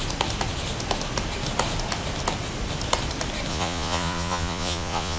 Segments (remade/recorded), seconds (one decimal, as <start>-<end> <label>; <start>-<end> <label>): 0.0-3.5 recorded; 3.5-5.2 remade